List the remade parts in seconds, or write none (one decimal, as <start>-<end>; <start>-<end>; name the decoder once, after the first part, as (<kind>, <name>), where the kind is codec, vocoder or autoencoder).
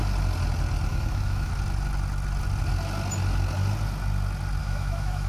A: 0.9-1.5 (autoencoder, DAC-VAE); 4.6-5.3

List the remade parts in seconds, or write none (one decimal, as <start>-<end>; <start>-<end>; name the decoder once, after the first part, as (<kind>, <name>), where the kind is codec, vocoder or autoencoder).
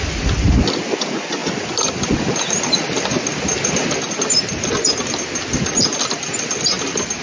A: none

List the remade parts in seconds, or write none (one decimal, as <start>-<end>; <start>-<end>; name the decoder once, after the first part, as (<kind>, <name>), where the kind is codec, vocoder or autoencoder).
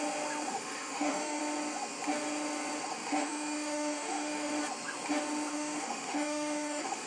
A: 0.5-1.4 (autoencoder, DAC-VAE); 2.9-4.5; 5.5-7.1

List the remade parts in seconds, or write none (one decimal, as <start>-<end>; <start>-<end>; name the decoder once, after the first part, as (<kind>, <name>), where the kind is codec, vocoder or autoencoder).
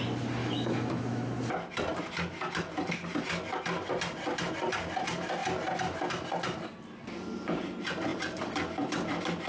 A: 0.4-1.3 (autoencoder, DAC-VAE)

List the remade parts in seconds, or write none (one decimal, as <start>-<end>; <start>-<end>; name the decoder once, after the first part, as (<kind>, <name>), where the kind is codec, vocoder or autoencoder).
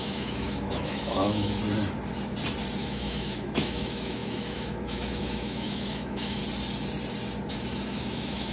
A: 0.0-1.6 (autoencoder, DAC-VAE); 2.8-6.4; 7.5-8.5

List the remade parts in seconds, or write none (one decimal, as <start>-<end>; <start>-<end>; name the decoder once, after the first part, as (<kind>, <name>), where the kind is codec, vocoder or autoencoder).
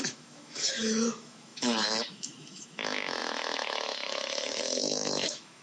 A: 0.0-5.6 (autoencoder, DAC-VAE)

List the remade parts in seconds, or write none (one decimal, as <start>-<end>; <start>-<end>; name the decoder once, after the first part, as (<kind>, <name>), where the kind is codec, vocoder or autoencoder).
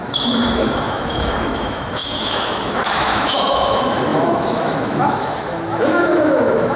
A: 0.0-6.8 (autoencoder, DAC-VAE)